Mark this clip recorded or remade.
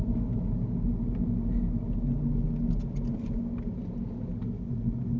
recorded